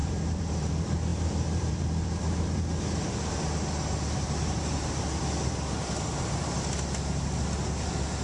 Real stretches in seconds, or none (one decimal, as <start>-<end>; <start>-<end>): 0.7-1.1; 3.3-8.2

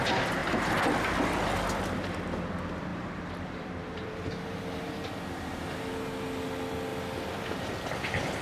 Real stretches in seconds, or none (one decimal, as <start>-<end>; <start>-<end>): 0.0-2.9; 4.3-8.4